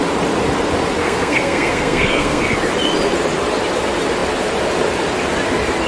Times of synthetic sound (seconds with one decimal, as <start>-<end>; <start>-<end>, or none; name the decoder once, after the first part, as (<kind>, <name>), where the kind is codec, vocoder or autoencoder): 1.0-2.4 (codec, SNAC)